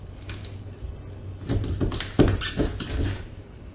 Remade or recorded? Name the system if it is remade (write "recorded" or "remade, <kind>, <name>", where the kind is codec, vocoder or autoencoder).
recorded